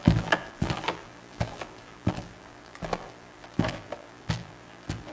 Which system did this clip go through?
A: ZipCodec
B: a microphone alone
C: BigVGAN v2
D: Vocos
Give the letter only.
C